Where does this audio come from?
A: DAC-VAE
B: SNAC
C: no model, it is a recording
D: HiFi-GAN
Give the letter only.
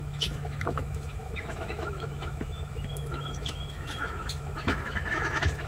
A